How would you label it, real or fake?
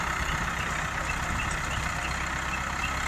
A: real